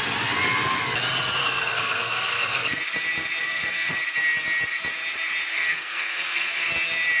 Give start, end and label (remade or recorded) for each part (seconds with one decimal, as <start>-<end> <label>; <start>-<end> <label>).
0.0-1.4 recorded; 1.4-2.8 remade; 2.8-3.4 recorded; 3.4-4.0 remade; 4.0-5.5 recorded; 5.5-6.7 remade; 6.7-7.2 recorded